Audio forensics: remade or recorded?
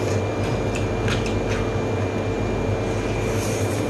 recorded